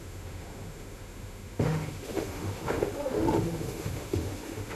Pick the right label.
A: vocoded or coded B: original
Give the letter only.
A